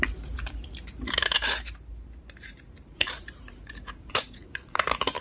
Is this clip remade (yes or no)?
yes